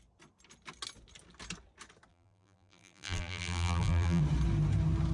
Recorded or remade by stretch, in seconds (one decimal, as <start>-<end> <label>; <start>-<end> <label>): 0.0-2.1 recorded; 2.1-4.2 remade; 4.2-5.1 recorded